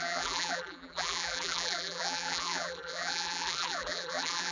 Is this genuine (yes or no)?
no